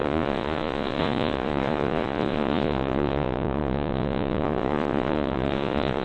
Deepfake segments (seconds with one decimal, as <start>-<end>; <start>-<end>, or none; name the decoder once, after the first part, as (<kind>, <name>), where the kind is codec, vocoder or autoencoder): 0.0-6.0 (vocoder, Vocos)